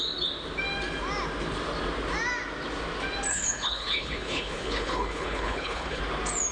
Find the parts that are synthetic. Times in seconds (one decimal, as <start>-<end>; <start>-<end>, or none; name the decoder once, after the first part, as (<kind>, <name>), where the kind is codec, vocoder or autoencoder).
3.3-6.0 (codec, HILCodec)